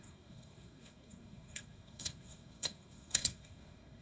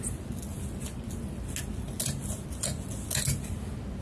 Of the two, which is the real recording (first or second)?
second